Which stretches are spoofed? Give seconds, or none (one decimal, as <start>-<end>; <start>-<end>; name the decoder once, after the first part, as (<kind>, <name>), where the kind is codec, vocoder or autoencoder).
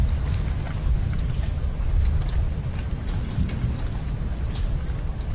0.0-0.9 (vocoder, BigVGAN v2)